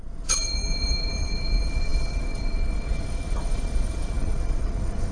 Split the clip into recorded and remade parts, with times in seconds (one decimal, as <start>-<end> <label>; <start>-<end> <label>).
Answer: 0.0-5.1 remade